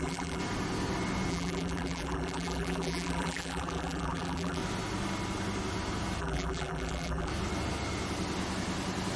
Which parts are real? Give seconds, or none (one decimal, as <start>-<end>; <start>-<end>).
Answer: 0.4-1.3; 4.6-6.2; 7.3-9.2